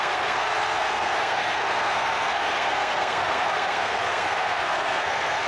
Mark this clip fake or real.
fake